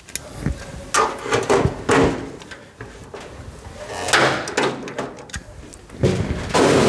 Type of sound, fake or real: real